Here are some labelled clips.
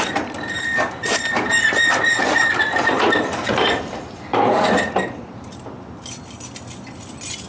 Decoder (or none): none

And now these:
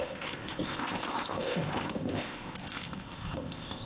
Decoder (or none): codec, ZipCodec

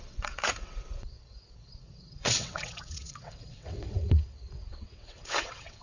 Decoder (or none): vocoder, WaveNeXt